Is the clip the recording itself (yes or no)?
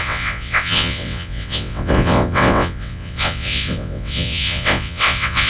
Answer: no